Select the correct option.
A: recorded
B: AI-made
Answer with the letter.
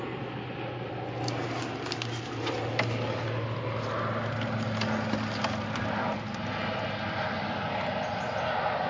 A